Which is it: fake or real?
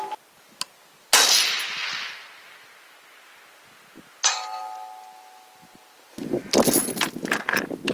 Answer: real